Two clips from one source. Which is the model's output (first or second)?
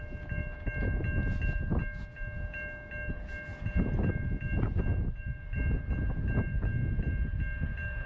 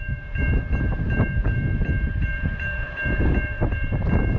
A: second